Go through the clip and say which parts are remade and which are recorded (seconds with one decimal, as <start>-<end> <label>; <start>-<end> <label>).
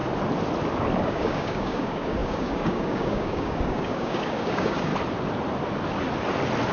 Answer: 0.0-1.0 recorded; 1.0-4.9 remade; 4.9-6.7 recorded